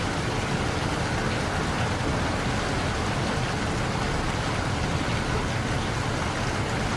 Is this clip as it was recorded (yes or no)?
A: yes